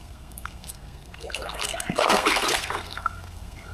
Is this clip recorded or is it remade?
remade